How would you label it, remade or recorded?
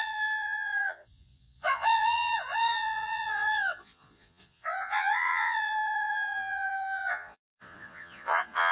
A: remade